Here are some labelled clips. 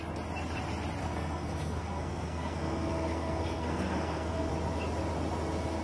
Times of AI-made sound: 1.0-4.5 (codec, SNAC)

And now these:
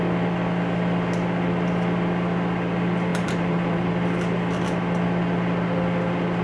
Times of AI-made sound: 3.1-3.9 (vocoder, BigVGAN v2)